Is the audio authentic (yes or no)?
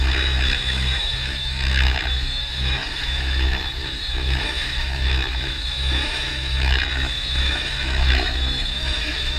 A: no